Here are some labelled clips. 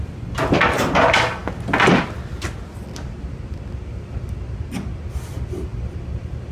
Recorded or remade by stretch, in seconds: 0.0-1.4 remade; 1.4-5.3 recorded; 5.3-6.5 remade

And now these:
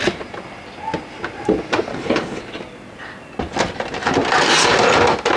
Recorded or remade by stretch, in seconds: 0.0-1.9 recorded; 1.9-2.4 remade; 2.4-5.4 recorded

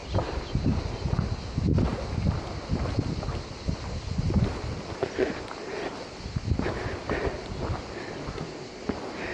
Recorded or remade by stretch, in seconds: 0.0-0.8 remade; 0.8-9.3 recorded

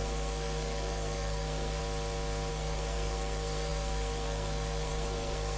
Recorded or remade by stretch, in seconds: 0.0-1.8 remade; 1.8-2.5 recorded; 2.5-5.6 remade